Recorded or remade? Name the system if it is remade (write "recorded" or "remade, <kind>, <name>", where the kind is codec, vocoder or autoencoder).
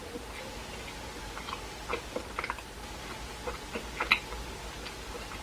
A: recorded